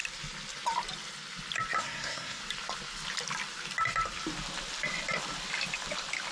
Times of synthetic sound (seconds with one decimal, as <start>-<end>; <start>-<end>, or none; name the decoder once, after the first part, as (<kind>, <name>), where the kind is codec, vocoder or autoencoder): 1.8-2.4 (codec, SNAC)